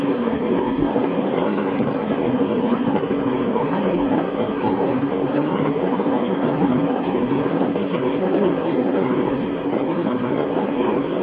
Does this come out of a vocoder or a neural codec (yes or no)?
yes